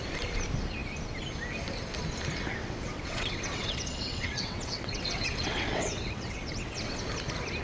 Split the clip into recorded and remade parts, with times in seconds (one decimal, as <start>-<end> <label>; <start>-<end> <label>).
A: 0.0-2.6 recorded; 2.6-7.0 remade; 7.0-7.6 recorded